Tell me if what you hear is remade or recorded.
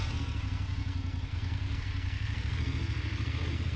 remade